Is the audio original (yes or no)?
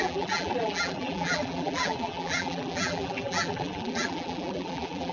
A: no